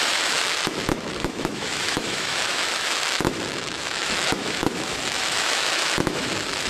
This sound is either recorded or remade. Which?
remade